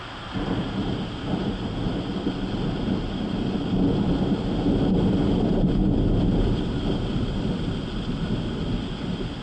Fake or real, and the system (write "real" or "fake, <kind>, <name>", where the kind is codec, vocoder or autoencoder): real